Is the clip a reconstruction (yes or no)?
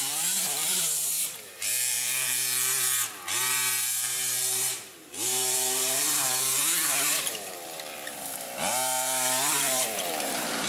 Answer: yes